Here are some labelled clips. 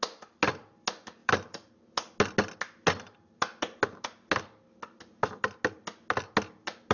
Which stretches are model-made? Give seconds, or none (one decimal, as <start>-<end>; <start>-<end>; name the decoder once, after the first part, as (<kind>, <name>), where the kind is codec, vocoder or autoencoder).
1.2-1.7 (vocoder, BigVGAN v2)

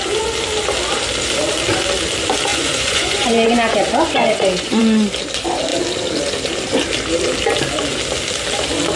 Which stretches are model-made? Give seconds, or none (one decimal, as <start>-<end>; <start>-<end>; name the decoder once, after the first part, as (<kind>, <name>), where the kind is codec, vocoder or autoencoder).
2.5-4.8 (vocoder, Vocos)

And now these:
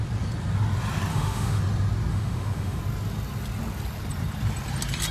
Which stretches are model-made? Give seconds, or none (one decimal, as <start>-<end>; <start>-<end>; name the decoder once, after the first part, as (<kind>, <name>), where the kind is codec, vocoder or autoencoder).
1.1-1.6 (autoencoder, DAC-VAE); 2.1-2.8

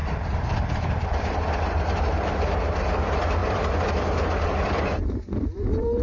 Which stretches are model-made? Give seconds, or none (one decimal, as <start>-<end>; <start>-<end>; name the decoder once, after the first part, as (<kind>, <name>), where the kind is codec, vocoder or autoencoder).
0.0-6.0 (vocoder, BigVGAN v2)